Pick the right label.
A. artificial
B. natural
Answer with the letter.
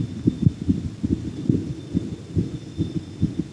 B